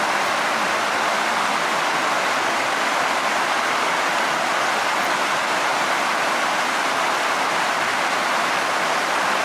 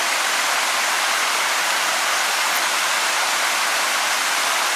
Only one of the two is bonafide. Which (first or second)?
first